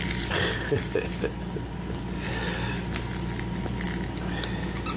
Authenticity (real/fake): real